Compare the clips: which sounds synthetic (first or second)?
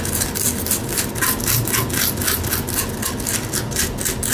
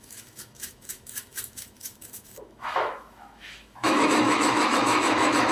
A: second